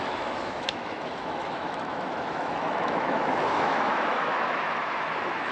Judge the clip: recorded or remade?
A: remade